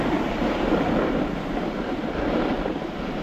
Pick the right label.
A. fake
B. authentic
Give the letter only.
B